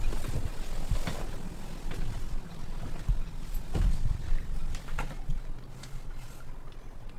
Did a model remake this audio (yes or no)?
no